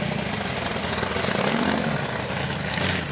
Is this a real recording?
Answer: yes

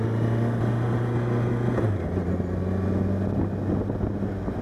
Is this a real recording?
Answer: yes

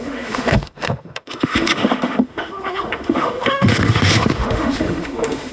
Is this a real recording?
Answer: no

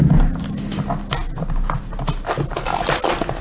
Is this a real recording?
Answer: yes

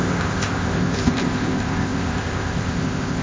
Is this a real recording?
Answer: no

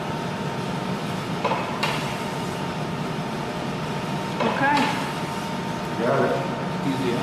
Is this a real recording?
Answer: yes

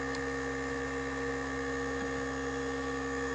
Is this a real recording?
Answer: no